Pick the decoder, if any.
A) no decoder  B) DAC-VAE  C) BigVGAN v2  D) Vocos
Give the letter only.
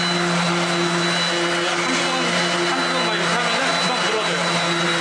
A